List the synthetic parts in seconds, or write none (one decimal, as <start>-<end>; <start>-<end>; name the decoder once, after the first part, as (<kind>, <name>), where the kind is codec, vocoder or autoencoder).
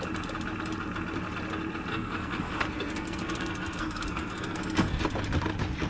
1.9-5.0 (codec, SNAC)